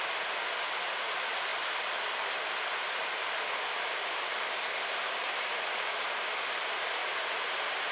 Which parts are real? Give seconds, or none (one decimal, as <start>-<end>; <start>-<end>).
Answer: 0.0-4.6; 5.1-7.9